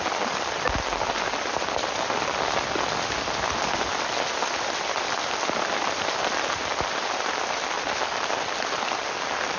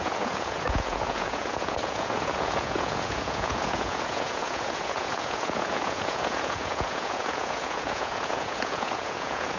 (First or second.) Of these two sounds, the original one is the first